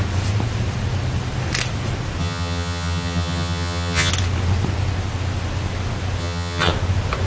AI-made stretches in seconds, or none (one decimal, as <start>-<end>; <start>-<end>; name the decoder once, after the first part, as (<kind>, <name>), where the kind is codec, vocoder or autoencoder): 2.2-4.1 (vocoder, HiFi-GAN); 6.2-6.7